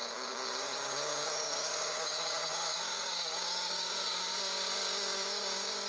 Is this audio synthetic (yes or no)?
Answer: yes